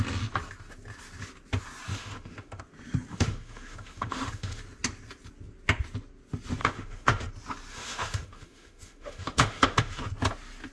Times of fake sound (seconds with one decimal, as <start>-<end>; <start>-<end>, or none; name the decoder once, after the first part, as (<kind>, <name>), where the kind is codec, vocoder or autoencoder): 1.9-2.6 (autoencoder, DAC-VAE); 3.1-4.6; 6.6-7.3; 7.7-10.1